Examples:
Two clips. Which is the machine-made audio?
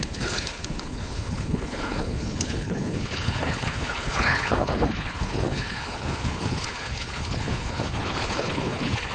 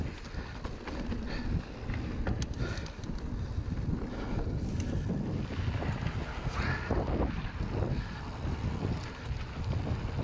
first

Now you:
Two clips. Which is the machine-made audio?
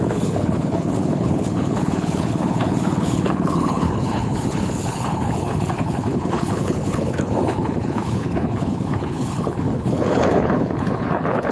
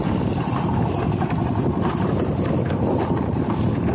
first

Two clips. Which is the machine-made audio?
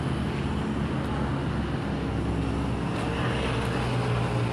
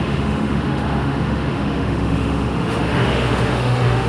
second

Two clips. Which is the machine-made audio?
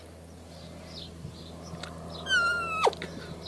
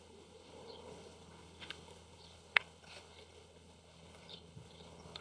second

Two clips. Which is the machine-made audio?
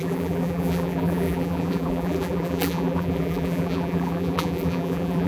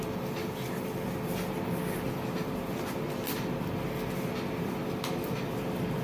first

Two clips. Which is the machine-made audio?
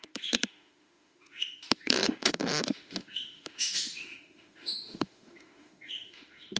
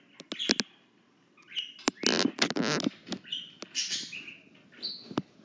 first